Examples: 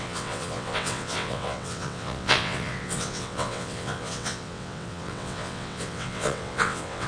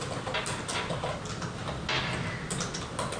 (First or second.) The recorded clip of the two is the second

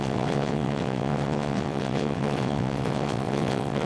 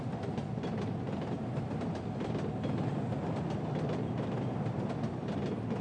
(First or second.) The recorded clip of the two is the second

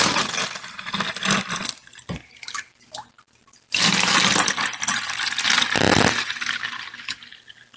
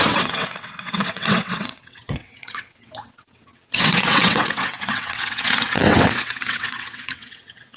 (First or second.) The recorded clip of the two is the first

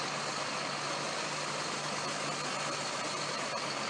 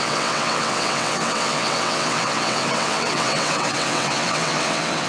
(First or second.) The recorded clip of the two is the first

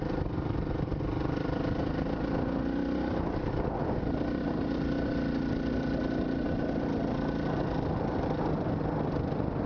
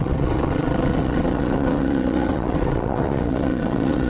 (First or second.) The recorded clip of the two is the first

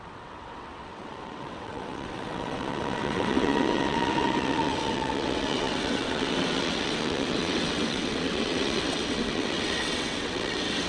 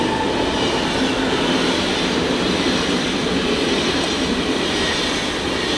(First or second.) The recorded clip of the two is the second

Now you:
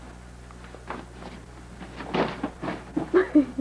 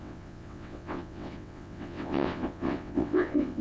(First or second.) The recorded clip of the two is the first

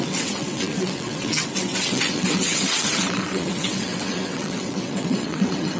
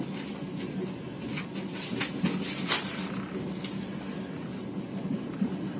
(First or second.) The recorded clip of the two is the second